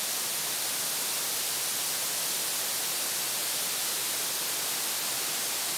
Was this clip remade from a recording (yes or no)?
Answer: no